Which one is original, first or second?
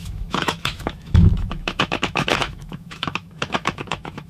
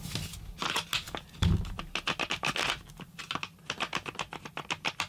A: second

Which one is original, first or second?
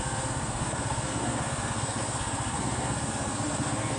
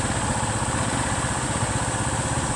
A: second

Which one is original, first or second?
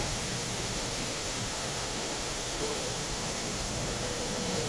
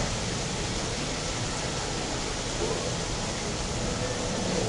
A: second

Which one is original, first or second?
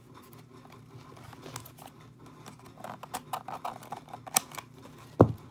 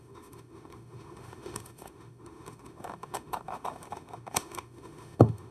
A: first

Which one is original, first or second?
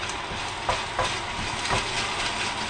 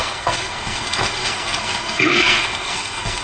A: first